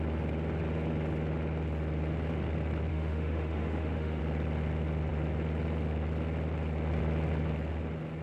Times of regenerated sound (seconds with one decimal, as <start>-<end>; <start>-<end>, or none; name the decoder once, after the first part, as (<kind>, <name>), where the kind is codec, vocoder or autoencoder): 2.9-4.2 (autoencoder, DAC-VAE)